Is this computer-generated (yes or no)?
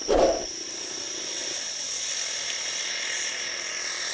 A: yes